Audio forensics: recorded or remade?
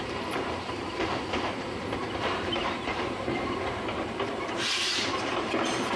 remade